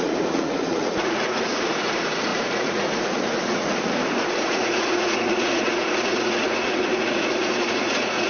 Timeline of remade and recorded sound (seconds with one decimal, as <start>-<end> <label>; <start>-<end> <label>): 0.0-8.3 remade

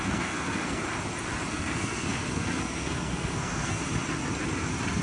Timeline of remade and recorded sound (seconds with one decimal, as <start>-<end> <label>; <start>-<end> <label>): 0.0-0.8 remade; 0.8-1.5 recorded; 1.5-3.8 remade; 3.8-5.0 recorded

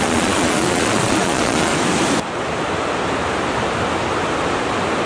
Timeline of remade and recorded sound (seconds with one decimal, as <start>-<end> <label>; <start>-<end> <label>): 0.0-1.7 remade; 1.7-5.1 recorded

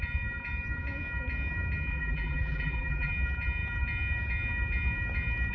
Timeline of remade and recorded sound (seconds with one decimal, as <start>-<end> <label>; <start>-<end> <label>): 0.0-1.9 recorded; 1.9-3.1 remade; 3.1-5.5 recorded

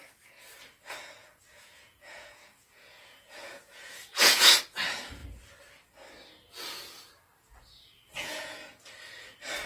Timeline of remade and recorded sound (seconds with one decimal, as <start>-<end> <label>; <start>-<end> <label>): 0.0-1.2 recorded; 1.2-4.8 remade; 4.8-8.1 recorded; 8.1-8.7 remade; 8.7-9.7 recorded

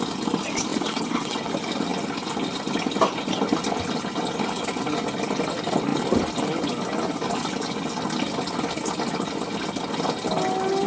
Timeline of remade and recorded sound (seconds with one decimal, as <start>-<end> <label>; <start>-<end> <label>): 0.0-0.7 recorded; 0.7-1.5 remade; 1.5-10.9 recorded